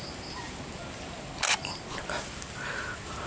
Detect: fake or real real